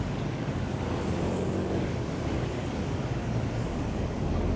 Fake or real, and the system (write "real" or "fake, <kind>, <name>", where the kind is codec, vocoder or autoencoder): fake, codec, DAC